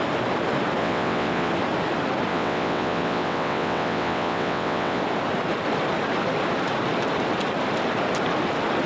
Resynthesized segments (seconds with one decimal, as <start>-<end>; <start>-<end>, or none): 0.8-1.5; 2.3-5.0